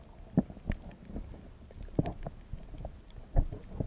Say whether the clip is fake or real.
real